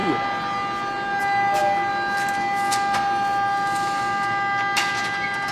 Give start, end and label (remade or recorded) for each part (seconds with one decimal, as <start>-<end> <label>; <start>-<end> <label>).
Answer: 0.0-5.5 recorded